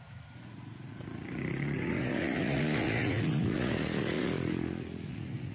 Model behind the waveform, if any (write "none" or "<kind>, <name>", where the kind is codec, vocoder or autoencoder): vocoder, Vocos